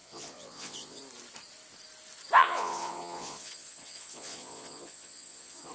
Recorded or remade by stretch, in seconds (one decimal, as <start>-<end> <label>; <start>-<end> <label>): 0.0-1.0 remade; 1.0-2.4 recorded; 2.4-5.7 remade